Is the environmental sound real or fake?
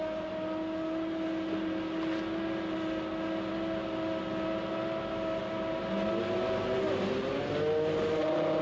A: real